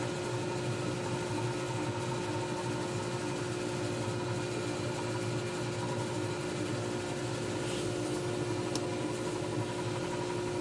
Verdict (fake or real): real